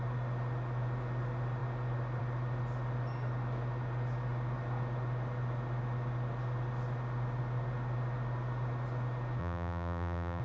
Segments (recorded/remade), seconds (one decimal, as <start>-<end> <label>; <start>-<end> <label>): 0.0-9.4 recorded; 9.4-10.4 remade

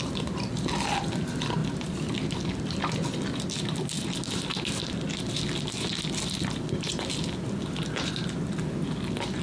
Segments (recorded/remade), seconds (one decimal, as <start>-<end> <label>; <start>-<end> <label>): 0.0-9.4 recorded

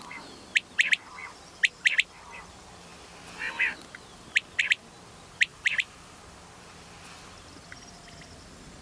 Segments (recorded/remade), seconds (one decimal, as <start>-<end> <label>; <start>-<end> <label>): 0.0-5.5 recorded; 5.5-6.2 remade; 6.2-8.8 recorded

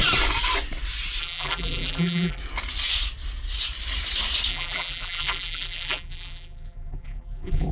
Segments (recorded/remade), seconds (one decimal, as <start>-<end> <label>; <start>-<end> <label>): 0.0-1.2 recorded; 1.2-2.4 remade; 2.4-4.5 recorded; 4.5-7.7 remade

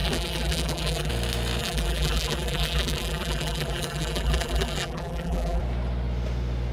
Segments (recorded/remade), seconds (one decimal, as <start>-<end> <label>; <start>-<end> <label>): 0.0-1.1 remade; 1.1-1.6 recorded; 1.6-5.6 remade; 5.6-6.7 recorded

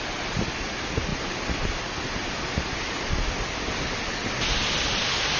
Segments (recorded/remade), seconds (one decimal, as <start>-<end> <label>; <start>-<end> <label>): 0.0-5.4 recorded

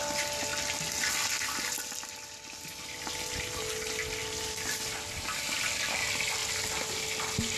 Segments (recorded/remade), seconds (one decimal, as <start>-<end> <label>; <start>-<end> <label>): 0.0-4.2 recorded; 4.2-5.7 remade; 5.7-6.4 recorded; 6.4-7.0 remade; 7.0-7.6 recorded

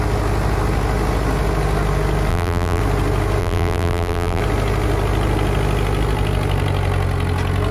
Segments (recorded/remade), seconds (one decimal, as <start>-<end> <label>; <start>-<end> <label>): 0.0-2.3 recorded; 2.3-2.8 remade; 2.8-3.4 recorded; 3.4-4.4 remade; 4.4-7.7 recorded